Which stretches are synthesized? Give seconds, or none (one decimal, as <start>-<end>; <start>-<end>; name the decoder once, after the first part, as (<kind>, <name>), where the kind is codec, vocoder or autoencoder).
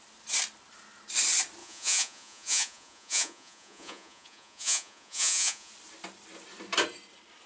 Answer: 1.6-5.7 (vocoder, Vocos)